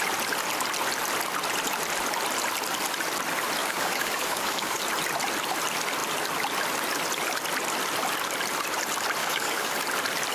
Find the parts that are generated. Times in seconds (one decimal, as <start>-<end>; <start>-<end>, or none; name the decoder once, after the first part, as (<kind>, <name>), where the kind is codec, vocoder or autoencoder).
3.6-4.8 (codec, DAC); 9.2-9.7